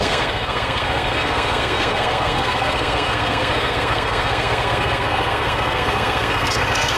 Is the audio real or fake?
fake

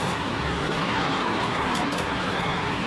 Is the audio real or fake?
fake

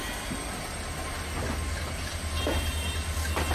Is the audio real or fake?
real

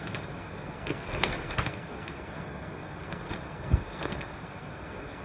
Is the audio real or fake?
fake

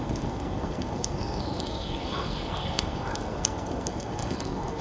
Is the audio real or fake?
fake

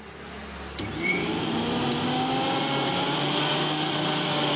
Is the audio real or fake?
real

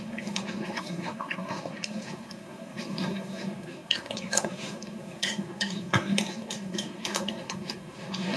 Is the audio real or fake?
fake